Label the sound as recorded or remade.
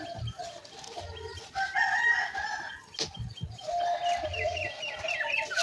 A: recorded